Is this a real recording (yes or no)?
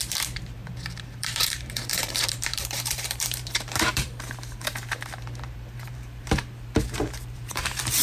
no